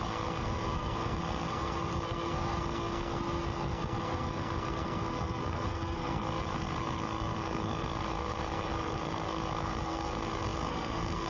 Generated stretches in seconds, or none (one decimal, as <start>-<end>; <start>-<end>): 0.0-11.3